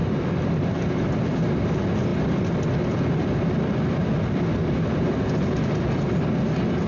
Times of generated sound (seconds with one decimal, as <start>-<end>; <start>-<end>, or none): 0.0-0.8